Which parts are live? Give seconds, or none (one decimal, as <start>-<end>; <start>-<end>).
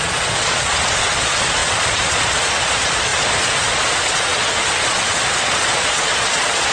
none